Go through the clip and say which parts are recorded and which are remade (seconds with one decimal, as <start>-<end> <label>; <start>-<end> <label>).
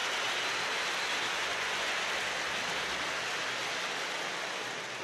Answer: 0.0-1.3 recorded; 1.3-2.0 remade; 2.0-5.0 recorded